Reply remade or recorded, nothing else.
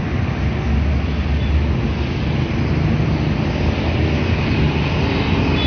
recorded